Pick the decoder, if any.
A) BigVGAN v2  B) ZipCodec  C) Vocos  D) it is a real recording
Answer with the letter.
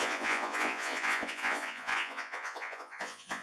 C